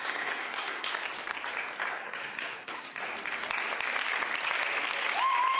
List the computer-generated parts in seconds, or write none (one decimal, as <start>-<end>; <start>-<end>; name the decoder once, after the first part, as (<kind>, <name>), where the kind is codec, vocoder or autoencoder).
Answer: 0.0-0.9 (codec, SNAC); 1.9-3.1